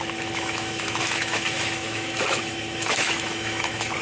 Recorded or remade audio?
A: remade